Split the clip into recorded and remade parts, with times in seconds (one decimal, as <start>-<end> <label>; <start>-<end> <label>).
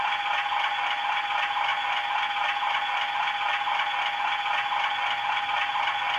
0.0-6.2 recorded